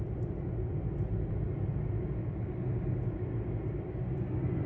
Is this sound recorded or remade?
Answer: recorded